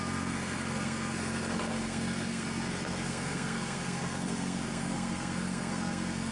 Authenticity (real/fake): fake